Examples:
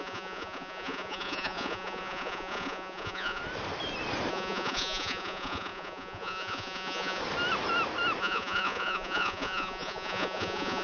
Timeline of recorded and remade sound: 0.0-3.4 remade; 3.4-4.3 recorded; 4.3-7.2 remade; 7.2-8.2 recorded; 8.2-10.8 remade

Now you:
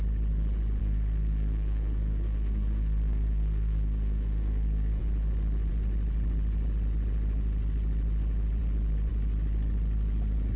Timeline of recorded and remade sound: 0.0-0.8 recorded; 0.8-5.0 remade; 5.0-10.6 recorded

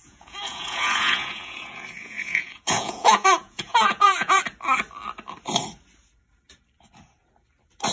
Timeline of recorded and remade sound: 0.0-4.4 remade; 4.4-7.9 recorded